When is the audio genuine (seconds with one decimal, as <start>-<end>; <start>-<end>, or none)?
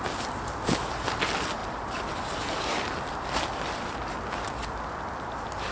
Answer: 0.0-5.7